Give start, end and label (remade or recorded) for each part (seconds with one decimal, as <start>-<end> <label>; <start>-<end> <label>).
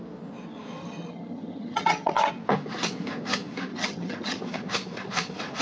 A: 0.0-0.8 recorded; 0.8-2.3 remade; 2.3-3.7 recorded; 3.7-4.4 remade; 4.4-5.6 recorded